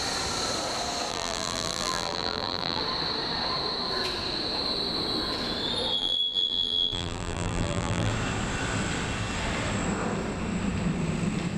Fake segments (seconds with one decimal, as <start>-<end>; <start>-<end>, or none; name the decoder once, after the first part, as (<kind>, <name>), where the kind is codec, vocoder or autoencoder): 1.1-2.8 (vocoder, BigVGAN v2); 6.0-8.1